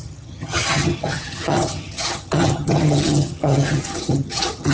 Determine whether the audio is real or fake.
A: fake